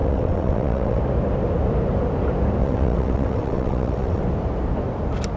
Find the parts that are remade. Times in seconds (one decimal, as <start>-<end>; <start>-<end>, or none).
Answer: 0.0-1.0; 2.6-4.2